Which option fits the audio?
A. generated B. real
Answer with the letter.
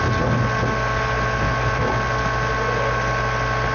B